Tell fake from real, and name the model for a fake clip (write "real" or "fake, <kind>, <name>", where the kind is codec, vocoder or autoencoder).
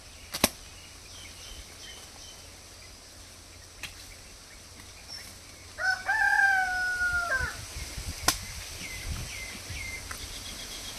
real